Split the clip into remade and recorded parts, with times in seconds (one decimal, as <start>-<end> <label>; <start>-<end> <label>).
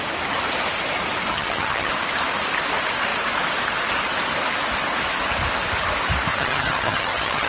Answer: 0.0-1.3 recorded; 1.3-1.9 remade; 1.9-6.3 recorded; 6.3-7.5 remade